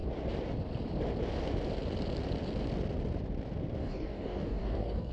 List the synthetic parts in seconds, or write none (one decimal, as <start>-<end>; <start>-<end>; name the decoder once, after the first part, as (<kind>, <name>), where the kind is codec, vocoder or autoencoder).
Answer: 3.8-5.1 (codec, DAC)